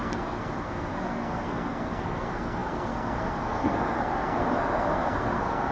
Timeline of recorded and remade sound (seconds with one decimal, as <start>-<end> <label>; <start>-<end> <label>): 0.0-5.7 remade